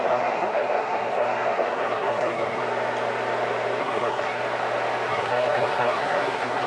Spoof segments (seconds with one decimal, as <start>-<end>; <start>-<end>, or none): 0.0-2.6; 3.8-4.4; 5.1-6.7

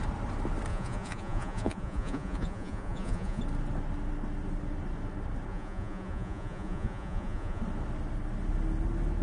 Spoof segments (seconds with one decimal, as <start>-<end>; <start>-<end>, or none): 0.7-3.4; 5.5-7.6

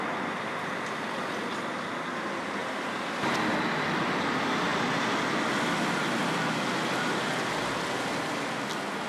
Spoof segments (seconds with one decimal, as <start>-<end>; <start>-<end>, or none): none

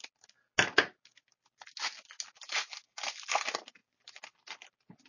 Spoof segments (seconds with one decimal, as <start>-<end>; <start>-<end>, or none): none

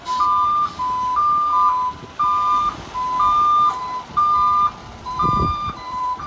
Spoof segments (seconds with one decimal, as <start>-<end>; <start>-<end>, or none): 4.8-6.3

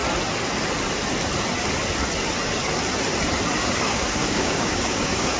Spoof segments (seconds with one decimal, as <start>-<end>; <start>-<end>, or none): 3.6-5.4

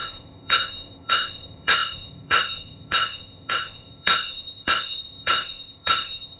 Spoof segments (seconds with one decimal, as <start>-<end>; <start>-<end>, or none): 0.0-6.4